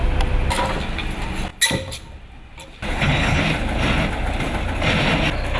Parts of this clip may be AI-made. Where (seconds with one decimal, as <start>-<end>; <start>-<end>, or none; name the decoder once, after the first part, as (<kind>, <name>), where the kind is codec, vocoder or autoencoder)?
2.9-3.4 (codec, HILCodec)